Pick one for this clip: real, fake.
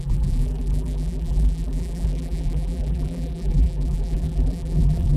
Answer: fake